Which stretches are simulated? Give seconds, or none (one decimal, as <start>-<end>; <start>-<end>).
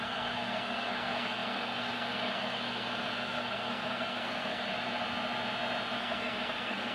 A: 0.0-4.7; 6.0-6.9